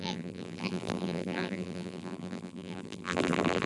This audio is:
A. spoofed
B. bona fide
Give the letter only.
A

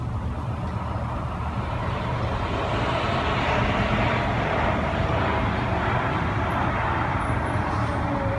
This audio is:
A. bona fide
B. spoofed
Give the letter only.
A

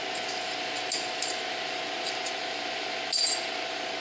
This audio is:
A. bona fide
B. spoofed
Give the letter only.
A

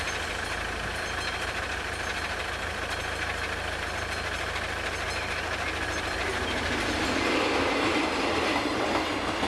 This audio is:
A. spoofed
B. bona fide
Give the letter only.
B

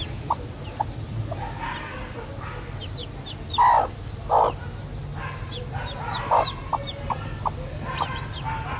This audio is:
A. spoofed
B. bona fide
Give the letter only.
B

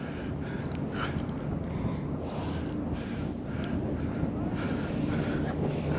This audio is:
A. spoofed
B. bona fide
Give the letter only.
B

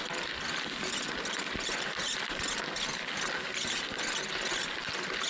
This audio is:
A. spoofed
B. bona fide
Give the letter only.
B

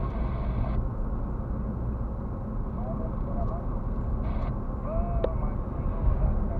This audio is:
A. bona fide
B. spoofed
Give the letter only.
A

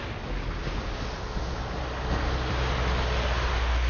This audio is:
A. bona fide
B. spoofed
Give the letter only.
A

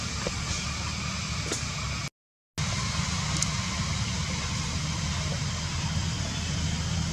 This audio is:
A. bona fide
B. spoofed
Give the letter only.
A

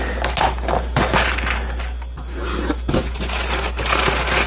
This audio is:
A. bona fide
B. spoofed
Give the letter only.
A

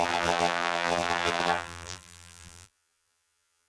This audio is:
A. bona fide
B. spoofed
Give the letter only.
B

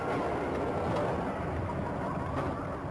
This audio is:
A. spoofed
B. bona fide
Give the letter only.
B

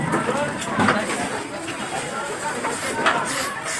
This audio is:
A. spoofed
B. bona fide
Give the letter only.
A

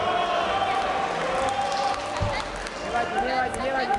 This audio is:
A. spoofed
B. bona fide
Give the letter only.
B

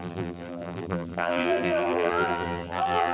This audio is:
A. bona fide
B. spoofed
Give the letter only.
B